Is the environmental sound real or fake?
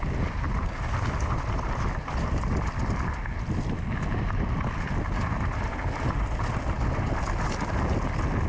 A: real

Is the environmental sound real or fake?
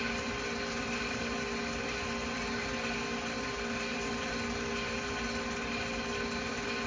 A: real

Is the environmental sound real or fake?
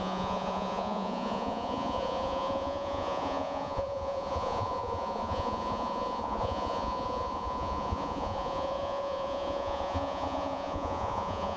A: fake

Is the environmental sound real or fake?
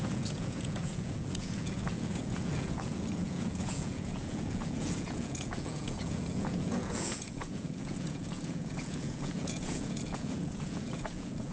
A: fake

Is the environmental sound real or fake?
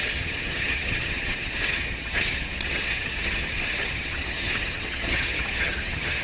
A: fake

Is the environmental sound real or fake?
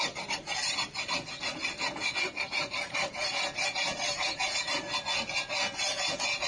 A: real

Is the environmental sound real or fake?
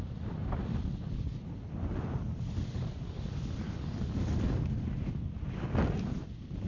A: real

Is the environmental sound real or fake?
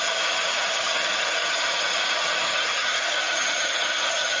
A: fake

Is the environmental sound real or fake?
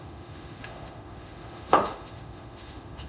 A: fake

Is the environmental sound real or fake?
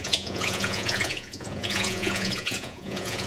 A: fake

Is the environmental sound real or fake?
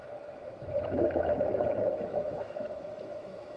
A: fake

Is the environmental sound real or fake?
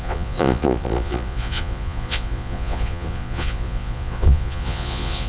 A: fake